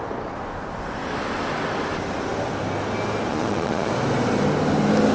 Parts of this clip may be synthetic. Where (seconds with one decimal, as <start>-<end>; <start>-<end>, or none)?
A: 3.3-3.9